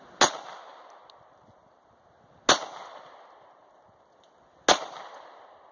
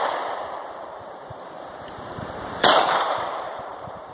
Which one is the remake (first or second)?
second